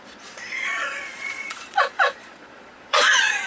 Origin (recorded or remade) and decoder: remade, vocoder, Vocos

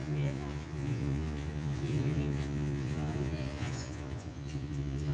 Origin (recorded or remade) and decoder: remade, vocoder, Vocos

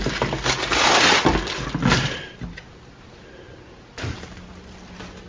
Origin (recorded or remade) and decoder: recorded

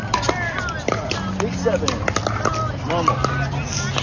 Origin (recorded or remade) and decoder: recorded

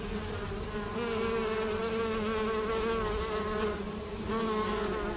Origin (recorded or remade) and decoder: recorded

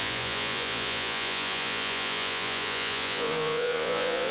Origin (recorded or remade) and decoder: remade, vocoder, Vocos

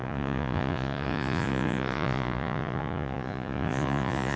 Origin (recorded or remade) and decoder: remade, vocoder, Vocos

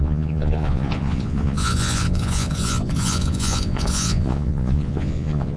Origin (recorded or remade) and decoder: remade, vocoder, Vocos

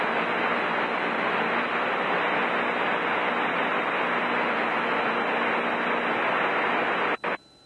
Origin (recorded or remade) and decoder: recorded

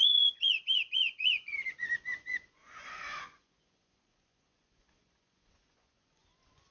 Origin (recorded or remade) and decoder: remade, vocoder, Vocos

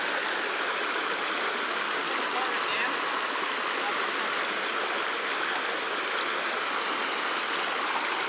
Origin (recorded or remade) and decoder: recorded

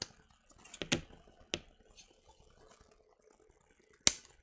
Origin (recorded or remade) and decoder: recorded